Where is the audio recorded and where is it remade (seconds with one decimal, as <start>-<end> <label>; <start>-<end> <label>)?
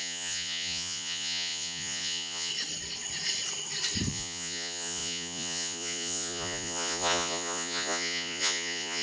0.0-2.5 remade; 2.5-4.1 recorded; 4.1-9.0 remade